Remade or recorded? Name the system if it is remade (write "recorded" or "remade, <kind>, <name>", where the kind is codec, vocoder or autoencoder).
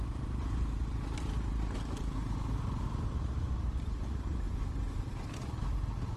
recorded